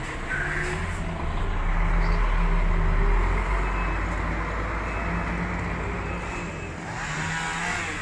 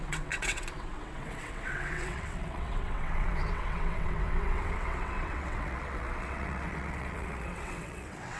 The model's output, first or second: second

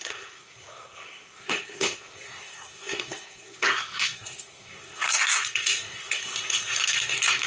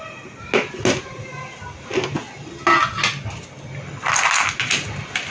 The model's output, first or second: first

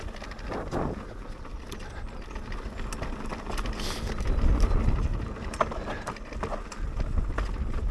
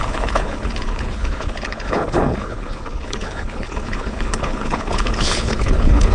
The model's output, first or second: second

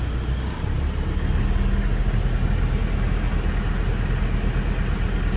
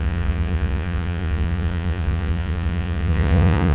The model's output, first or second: second